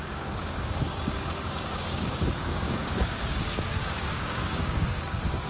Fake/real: fake